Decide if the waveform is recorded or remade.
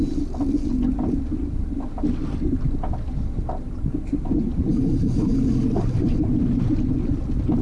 recorded